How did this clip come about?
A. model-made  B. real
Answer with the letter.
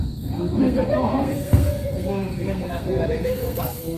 A